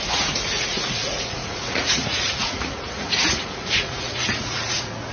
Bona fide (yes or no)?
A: no